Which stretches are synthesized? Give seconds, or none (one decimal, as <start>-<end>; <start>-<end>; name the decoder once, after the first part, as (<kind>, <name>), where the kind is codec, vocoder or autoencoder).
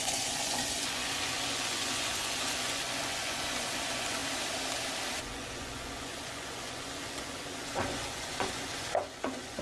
0.0-4.2 (vocoder, Vocos); 5.2-9.6